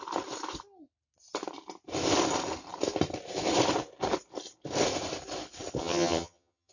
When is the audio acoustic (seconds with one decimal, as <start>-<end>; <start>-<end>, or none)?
0.0-5.8